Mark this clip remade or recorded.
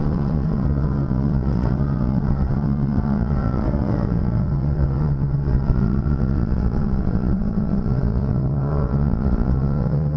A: remade